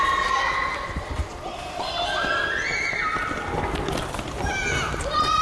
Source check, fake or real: real